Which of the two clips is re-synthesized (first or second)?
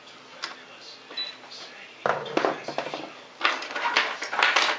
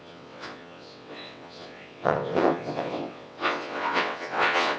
second